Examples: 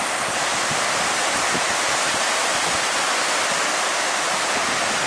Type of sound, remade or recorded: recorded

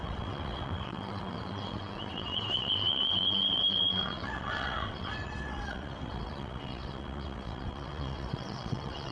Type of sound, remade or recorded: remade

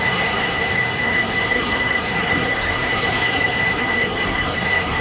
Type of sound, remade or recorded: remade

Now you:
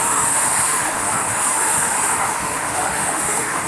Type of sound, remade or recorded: remade